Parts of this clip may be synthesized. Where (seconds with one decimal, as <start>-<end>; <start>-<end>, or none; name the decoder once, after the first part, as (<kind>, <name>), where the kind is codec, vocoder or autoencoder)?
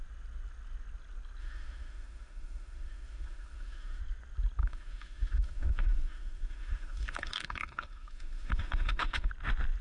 1.4-4.0 (autoencoder, DAC-VAE); 4.6-9.3